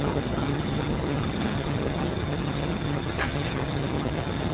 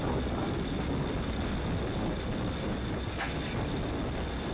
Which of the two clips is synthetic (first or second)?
first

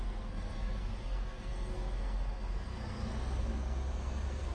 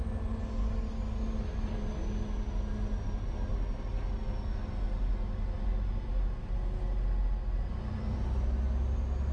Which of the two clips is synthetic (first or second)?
first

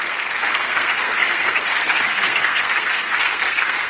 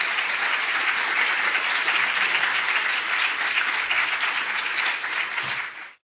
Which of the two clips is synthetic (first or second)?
first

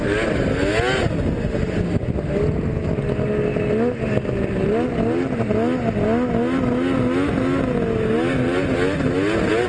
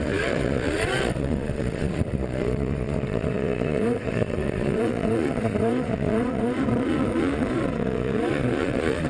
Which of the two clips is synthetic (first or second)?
second